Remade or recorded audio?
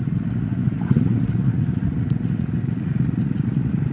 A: remade